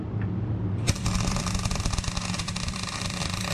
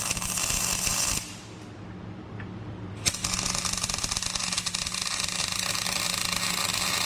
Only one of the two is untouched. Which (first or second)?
second